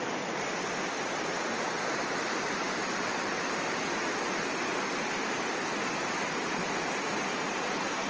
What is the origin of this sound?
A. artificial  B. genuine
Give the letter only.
B